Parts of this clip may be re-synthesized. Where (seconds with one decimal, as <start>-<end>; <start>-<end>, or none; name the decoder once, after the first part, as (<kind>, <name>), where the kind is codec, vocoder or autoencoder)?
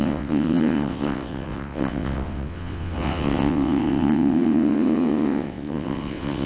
0.0-6.5 (vocoder, WaveNeXt)